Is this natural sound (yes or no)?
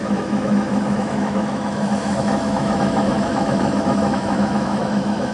no